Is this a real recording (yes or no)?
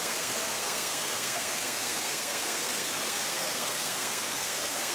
no